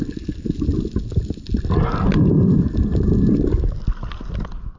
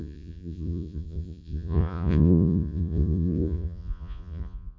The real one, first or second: first